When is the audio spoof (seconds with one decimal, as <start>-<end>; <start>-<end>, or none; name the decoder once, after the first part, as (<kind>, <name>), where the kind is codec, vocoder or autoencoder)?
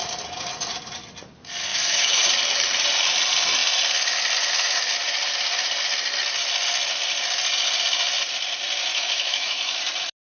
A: 1.7-2.2 (autoencoder, DAC-VAE); 8.9-9.8